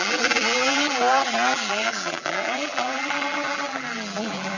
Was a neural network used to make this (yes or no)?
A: yes